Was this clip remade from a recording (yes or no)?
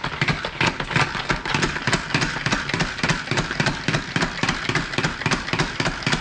no